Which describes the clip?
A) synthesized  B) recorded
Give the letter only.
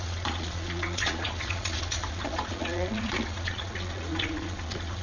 A